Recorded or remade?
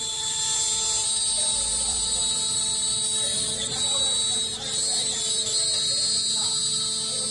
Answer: recorded